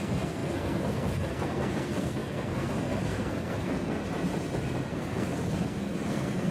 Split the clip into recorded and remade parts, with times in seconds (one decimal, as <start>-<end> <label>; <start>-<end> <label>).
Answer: 0.0-4.0 remade; 4.0-4.9 recorded; 4.9-6.5 remade